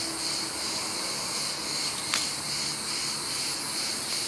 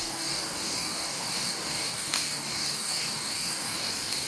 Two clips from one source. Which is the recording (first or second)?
first